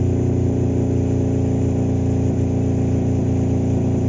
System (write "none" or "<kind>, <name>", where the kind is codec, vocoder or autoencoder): none